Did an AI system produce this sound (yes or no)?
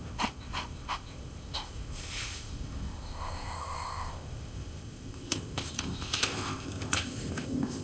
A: yes